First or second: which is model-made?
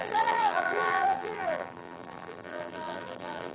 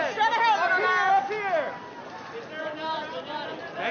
first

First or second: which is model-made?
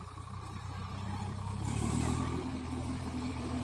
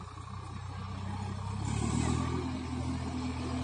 first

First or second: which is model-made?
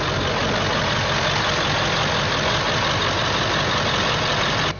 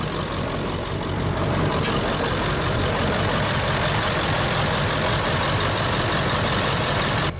second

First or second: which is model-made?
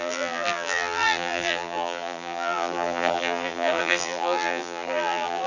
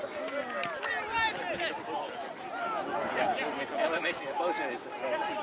first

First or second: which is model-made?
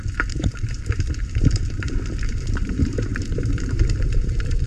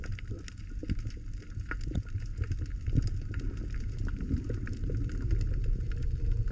first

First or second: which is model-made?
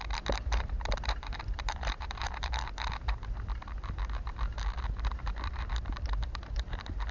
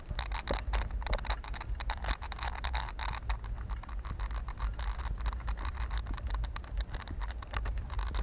first